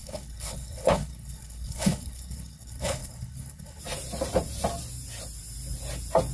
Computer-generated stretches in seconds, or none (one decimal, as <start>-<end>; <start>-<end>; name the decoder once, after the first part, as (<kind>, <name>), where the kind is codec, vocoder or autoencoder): 0.0-3.8 (codec, HILCodec)